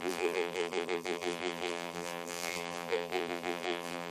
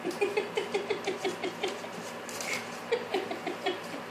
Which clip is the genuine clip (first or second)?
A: second